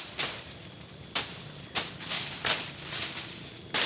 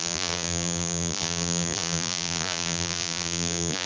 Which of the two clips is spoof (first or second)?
second